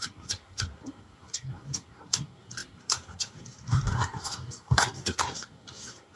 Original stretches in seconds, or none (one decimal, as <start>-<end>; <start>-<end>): none